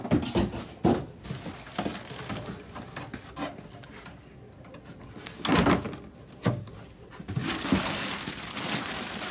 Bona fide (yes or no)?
yes